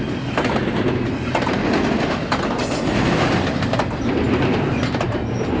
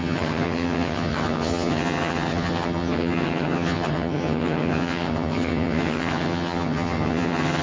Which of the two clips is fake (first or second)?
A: second